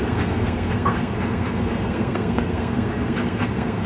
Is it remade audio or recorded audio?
remade